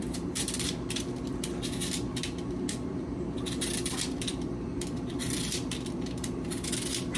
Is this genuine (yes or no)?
no